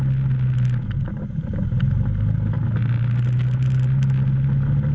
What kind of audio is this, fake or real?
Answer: real